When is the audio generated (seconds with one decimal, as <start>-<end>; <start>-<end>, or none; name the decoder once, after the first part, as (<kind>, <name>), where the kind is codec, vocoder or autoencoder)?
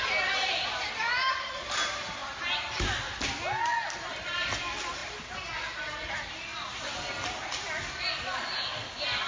0.0-2.2 (vocoder, BigVGAN v2); 4.6-5.0; 6.1-6.5